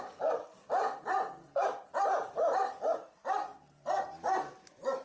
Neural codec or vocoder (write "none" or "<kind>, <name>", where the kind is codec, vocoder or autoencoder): none